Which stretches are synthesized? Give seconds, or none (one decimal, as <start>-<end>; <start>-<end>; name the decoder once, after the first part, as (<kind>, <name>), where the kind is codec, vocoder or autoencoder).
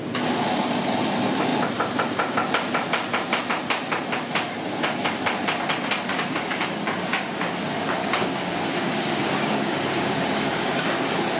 6.1-7.5 (codec, DAC); 8.0-11.0